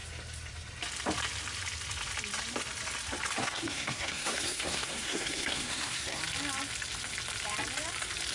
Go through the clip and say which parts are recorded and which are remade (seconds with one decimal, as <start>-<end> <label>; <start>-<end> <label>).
0.0-3.4 recorded; 3.4-6.2 remade; 6.2-8.3 recorded